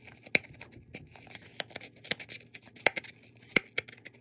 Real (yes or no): yes